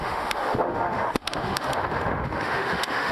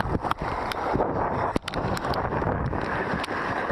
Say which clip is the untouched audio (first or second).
second